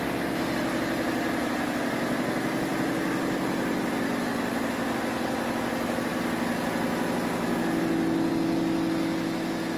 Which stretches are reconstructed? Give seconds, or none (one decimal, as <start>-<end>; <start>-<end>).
none